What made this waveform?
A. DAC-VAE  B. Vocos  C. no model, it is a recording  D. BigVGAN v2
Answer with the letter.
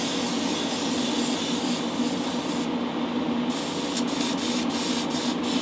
C